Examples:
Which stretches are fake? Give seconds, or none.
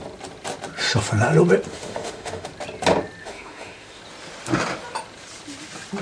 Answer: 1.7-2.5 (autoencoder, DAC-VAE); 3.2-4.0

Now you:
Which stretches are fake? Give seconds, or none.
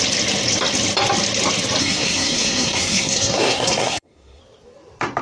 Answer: 1.8-4.4 (codec, SNAC)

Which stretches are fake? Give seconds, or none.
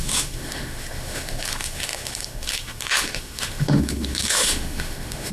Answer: 0.0-5.3 (autoencoder, DAC-VAE)